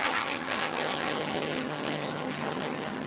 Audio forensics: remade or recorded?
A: remade